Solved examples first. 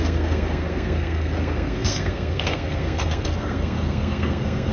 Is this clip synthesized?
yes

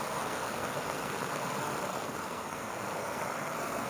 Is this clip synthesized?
yes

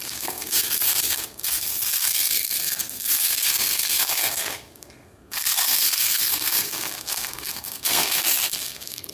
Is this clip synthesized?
yes